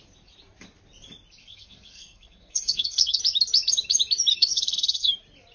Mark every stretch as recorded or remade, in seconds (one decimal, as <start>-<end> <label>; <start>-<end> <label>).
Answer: 0.0-1.4 recorded; 1.4-3.2 remade; 3.2-4.3 recorded; 4.3-5.1 remade; 5.1-5.5 recorded